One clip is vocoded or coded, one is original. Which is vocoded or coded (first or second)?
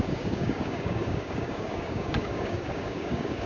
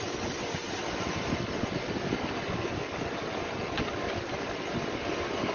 first